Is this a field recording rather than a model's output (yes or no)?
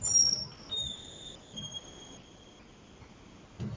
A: yes